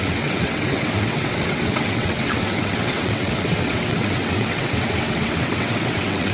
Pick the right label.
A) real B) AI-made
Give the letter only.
B